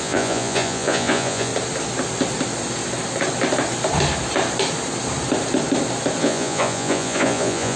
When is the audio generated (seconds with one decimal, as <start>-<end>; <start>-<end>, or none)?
0.0-1.5; 6.2-7.8